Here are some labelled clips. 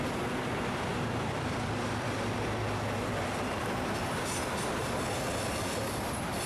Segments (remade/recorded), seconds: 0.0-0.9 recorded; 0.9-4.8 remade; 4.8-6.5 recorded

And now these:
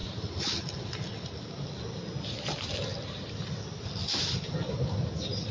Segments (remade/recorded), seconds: 0.0-5.5 recorded

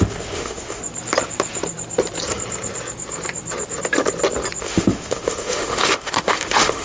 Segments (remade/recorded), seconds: 0.0-0.8 remade; 0.8-4.6 recorded; 4.6-6.8 remade